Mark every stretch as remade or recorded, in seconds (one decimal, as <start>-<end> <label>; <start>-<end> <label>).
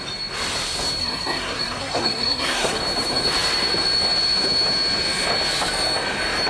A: 0.0-1.0 recorded; 1.0-2.8 remade; 2.8-6.5 recorded